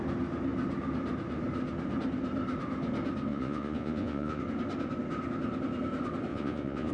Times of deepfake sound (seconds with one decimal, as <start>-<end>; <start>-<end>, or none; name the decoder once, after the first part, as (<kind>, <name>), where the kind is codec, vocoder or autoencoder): 3.3-4.4 (vocoder, Vocos); 6.3-6.9